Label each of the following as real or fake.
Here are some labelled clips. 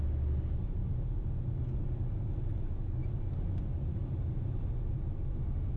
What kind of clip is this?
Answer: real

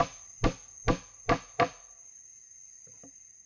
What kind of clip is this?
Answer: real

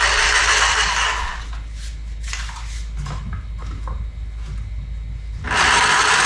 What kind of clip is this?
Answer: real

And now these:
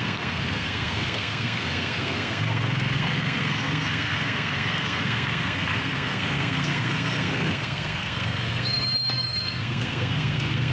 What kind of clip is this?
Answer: fake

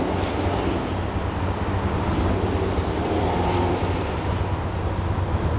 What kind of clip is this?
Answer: real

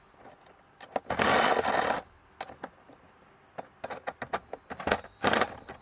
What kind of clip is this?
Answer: real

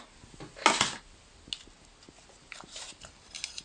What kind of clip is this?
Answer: real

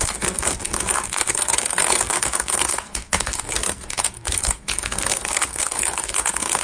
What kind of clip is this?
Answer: fake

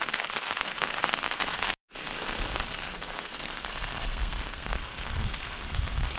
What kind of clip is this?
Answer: fake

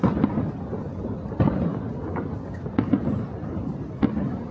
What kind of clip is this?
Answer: real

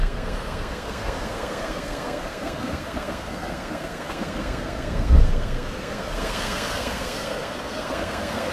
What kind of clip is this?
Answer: fake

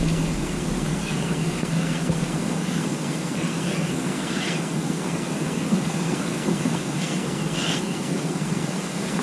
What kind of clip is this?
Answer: fake